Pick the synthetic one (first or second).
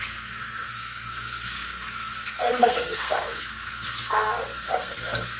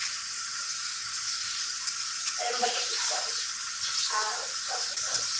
first